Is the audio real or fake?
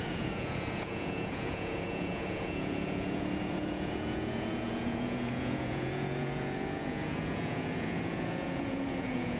fake